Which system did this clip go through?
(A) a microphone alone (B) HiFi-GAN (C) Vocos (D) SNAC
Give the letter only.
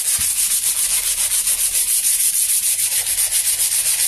A